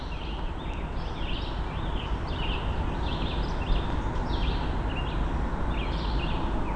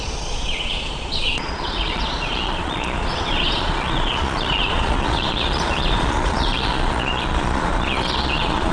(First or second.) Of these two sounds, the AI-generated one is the second